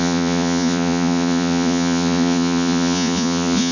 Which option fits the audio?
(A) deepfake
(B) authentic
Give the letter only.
A